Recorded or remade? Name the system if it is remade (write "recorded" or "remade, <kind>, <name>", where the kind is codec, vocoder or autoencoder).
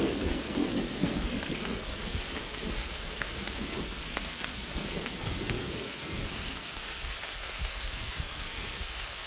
remade, codec, SNAC